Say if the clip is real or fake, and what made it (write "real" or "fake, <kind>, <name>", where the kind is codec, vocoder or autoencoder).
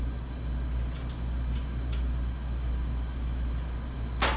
real